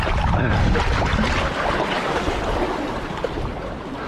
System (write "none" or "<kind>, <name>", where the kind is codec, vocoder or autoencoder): none